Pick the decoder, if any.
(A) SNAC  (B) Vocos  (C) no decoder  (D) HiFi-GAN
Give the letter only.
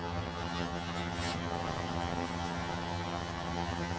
D